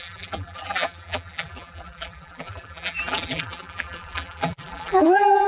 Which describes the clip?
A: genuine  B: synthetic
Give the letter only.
B